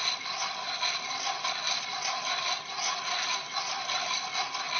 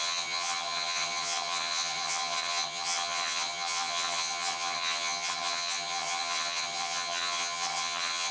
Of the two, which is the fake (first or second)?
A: second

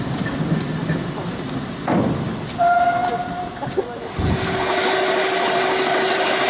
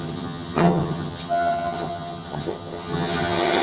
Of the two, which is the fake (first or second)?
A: second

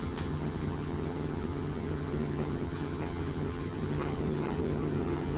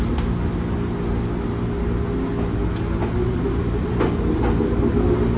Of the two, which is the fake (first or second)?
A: first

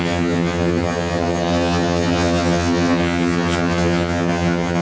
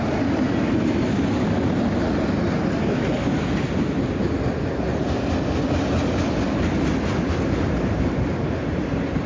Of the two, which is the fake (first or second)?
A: first